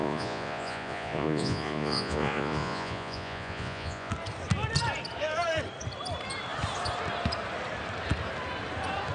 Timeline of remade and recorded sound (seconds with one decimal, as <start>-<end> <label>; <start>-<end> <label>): 0.0-4.1 remade; 4.1-9.1 recorded